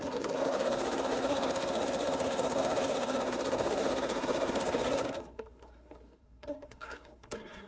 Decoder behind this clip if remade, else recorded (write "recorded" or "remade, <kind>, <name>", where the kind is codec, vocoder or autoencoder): remade, codec, SNAC